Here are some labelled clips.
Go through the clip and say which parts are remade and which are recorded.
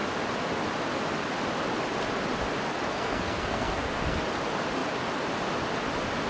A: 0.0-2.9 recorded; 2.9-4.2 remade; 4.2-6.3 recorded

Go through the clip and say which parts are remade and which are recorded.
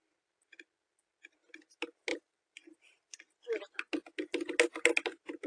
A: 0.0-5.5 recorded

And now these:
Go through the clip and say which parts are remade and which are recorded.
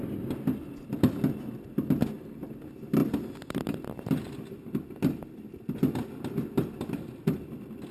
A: 0.0-7.9 recorded